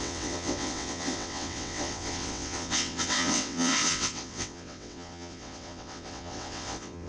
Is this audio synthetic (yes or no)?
yes